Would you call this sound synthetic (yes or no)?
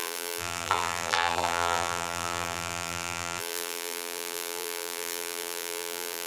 yes